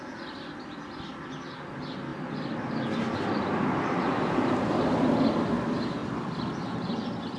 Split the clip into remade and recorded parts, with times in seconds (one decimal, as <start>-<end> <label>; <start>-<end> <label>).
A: 0.0-6.0 recorded; 6.0-6.6 remade; 6.6-7.4 recorded